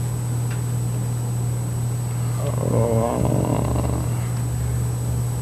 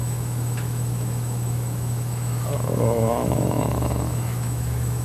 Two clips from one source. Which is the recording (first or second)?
first